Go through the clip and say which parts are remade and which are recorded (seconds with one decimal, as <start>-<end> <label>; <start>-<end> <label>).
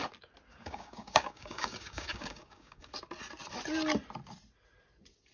0.0-0.5 recorded; 0.5-2.9 remade; 2.9-5.3 recorded